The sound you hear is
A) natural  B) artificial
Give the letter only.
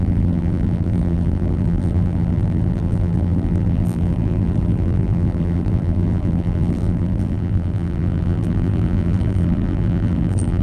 B